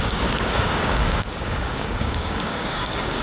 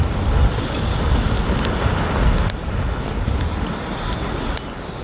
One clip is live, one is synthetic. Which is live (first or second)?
second